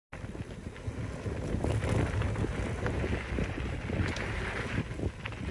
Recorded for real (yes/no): yes